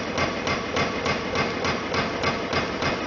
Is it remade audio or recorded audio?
recorded